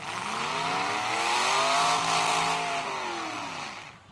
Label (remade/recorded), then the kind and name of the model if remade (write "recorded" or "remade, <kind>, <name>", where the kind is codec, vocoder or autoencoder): recorded